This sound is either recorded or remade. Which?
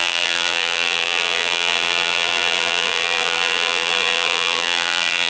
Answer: remade